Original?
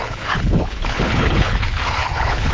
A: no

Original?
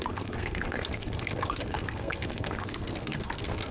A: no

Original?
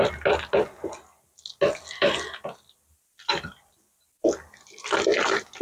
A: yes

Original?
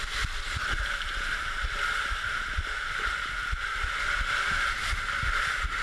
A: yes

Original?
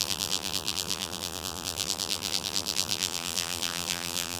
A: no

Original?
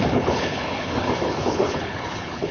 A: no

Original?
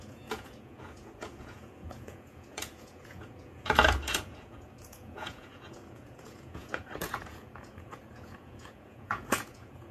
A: no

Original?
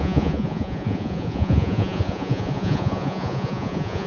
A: no